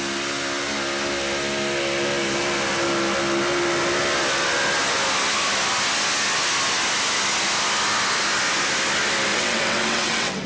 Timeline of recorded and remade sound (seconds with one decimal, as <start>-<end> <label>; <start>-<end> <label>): 0.0-9.3 recorded; 9.3-10.5 remade

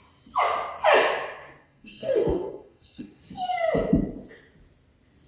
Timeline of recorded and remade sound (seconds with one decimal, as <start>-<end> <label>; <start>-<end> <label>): 0.0-1.6 recorded; 1.6-3.2 remade; 3.2-5.3 recorded

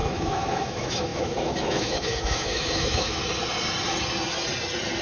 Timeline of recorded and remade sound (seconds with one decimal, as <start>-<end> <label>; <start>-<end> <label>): 0.0-3.2 remade; 3.2-5.0 recorded

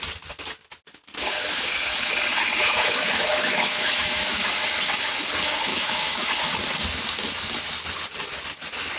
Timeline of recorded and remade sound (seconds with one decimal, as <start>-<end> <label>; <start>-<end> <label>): 0.0-2.6 recorded; 2.6-4.6 remade; 4.6-5.7 recorded; 5.7-6.3 remade; 6.3-9.0 recorded

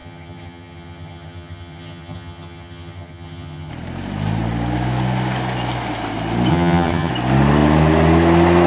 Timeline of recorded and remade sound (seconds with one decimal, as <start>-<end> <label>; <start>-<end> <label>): 0.0-3.7 remade; 3.7-6.5 recorded; 6.5-7.1 remade; 7.1-8.7 recorded

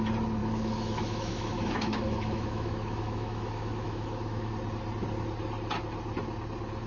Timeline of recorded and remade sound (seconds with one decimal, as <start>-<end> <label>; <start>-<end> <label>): 0.0-0.4 recorded; 0.4-4.5 remade; 4.5-6.9 recorded